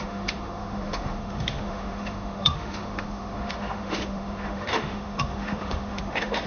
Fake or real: fake